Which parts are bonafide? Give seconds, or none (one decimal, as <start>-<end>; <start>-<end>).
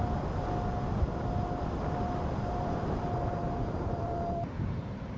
0.0-2.3; 4.8-5.2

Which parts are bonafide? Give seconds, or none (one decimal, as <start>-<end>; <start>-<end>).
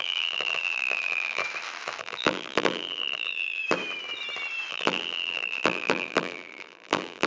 1.4-2.0; 3.6-4.7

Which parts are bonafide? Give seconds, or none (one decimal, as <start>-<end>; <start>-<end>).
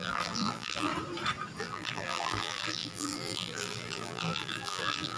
0.9-1.6